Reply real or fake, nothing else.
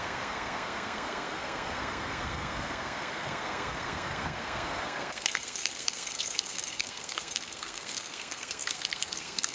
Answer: fake